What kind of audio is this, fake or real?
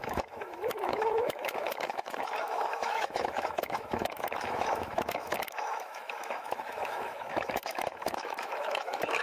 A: fake